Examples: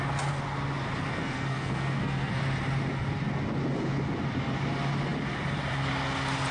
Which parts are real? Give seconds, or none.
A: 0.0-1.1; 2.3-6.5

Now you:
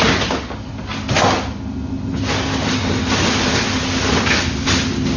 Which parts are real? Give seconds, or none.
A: 0.0-5.2